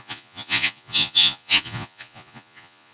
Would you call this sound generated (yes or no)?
yes